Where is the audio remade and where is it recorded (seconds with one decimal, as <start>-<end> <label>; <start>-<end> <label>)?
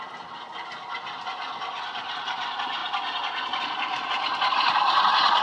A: 0.0-5.4 recorded